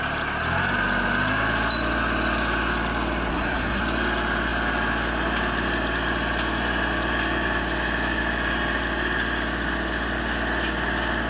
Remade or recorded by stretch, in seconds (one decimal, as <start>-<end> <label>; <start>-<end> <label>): 0.0-3.3 recorded; 3.3-3.8 remade; 3.8-11.3 recorded

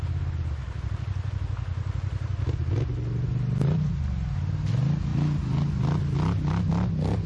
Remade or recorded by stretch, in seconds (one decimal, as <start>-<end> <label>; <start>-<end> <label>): 0.0-7.3 recorded

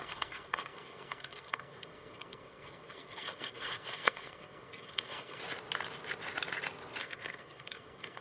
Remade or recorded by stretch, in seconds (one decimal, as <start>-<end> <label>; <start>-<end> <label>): 0.0-5.4 remade; 5.4-7.0 recorded; 7.0-8.2 remade

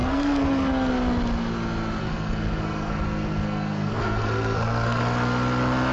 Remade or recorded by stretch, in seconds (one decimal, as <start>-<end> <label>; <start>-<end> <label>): 0.0-0.9 remade; 0.9-2.0 recorded; 2.0-5.0 remade; 5.0-5.9 recorded

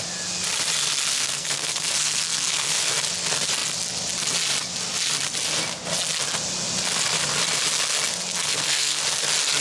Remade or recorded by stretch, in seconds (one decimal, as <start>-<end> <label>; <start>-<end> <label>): 0.0-1.1 recorded; 1.1-3.0 remade; 3.0-8.4 recorded; 8.4-9.0 remade; 9.0-9.6 recorded